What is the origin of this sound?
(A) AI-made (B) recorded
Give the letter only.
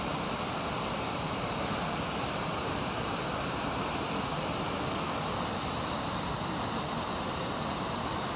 B